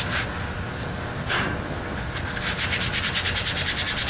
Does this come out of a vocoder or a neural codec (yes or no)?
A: no